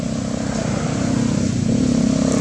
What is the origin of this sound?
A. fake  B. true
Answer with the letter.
B